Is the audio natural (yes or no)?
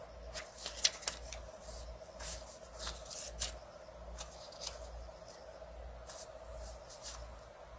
yes